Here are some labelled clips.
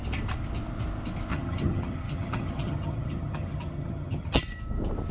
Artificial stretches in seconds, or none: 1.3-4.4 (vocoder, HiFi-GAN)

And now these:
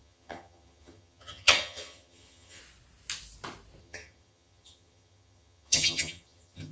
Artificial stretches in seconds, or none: 0.0-2.6 (vocoder, HiFi-GAN); 3.8-6.7

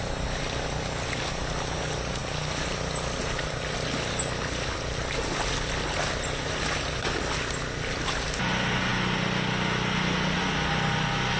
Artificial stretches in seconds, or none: none

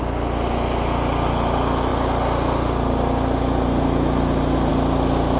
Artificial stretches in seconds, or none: none

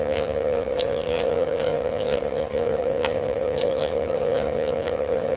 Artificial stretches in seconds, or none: 0.0-5.4 (vocoder, HiFi-GAN)

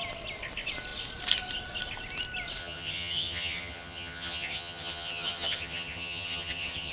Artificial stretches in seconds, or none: 2.6-6.9 (vocoder, HiFi-GAN)

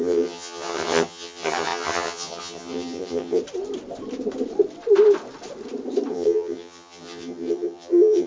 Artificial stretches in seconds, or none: 0.0-3.4 (vocoder, HiFi-GAN); 6.1-8.3